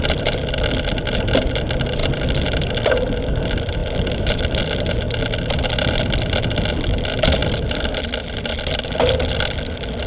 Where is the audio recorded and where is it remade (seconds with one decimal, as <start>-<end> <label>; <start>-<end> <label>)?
0.0-10.1 recorded